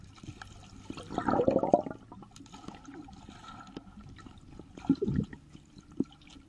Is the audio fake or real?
real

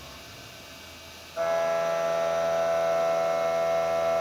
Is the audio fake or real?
real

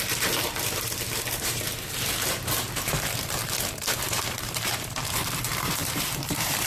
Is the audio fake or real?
fake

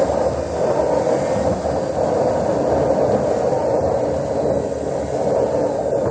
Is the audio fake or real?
real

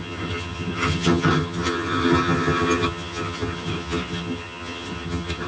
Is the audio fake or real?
fake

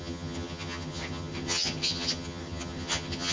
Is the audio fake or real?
fake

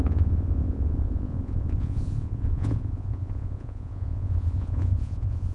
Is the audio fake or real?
fake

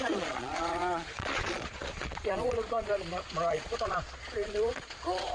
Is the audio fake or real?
fake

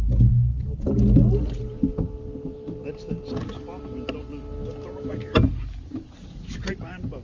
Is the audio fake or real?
real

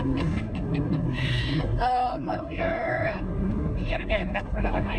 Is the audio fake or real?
fake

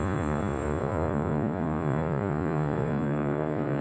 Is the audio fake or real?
fake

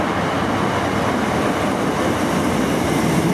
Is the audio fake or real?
real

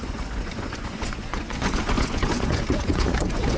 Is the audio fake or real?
fake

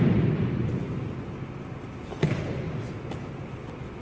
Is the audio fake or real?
real